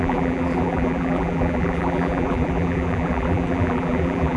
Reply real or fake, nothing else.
fake